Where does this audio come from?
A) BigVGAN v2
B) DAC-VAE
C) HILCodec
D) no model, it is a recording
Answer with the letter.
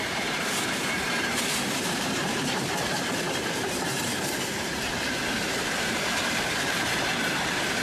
A